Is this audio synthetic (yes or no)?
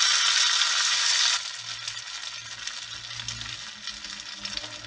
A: no